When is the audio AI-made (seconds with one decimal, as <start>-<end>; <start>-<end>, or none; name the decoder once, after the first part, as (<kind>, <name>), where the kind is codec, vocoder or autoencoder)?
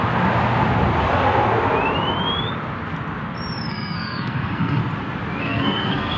3.7-4.8 (codec, SNAC); 5.4-6.2